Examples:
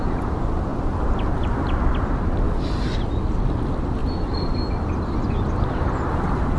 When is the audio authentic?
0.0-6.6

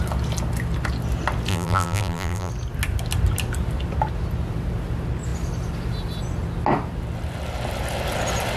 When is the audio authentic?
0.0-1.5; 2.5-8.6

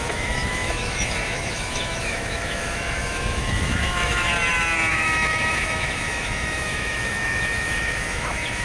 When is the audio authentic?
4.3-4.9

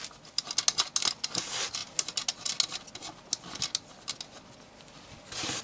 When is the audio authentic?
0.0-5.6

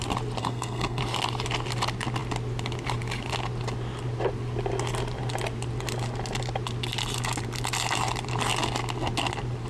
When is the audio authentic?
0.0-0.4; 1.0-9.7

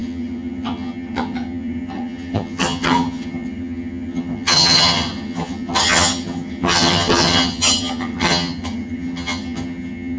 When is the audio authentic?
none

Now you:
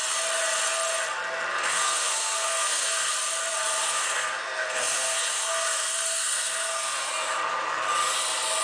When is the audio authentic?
0.0-1.5; 3.1-3.8; 7.1-8.6

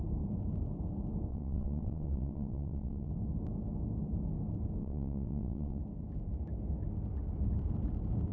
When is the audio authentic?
0.0-1.3; 3.1-4.8; 5.8-8.3